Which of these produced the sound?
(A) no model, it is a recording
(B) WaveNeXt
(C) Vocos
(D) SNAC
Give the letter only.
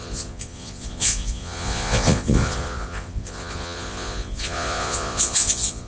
C